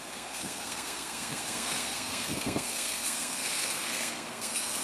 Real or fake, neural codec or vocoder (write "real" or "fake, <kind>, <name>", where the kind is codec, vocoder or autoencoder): fake, codec, SNAC